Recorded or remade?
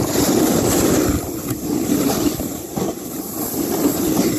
recorded